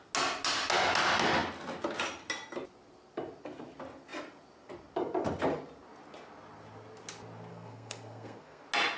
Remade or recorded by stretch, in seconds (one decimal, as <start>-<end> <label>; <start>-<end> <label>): 0.0-7.5 recorded; 7.5-8.6 remade; 8.6-9.0 recorded